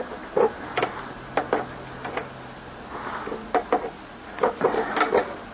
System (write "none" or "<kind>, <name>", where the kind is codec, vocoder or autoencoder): none